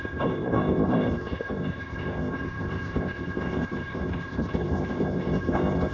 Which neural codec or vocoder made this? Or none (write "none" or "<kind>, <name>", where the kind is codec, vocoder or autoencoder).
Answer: codec, ZipCodec